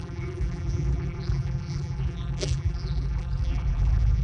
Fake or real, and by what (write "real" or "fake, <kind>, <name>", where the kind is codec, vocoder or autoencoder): fake, vocoder, BigVGAN v2